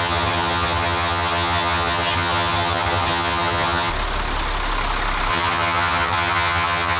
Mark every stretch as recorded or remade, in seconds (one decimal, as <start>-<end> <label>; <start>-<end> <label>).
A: 0.0-3.9 remade; 3.9-5.3 recorded; 5.3-7.0 remade